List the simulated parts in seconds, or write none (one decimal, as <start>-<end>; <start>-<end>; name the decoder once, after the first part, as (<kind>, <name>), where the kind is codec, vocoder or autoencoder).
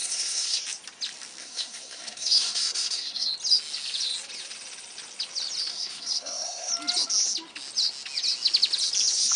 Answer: 0.0-0.6 (codec, SNAC); 1.4-3.3; 5.7-6.7